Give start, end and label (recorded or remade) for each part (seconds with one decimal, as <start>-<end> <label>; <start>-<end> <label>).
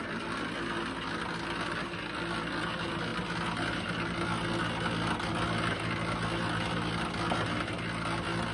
0.0-8.5 recorded